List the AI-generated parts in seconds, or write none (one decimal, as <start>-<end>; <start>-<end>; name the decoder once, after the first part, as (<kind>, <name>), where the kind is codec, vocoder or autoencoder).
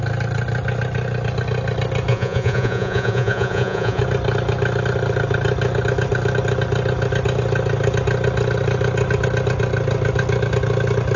2.1-4.0 (vocoder, Vocos)